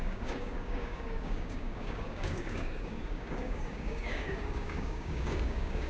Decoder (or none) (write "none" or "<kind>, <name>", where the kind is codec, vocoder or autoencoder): codec, DAC